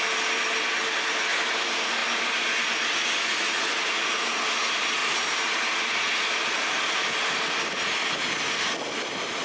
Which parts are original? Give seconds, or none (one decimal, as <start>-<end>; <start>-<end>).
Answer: 0.0-9.4